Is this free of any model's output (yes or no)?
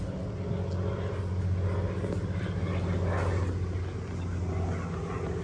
yes